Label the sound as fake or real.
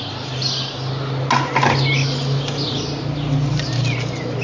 real